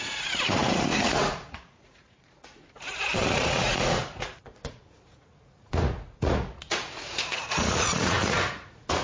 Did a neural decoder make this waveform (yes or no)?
yes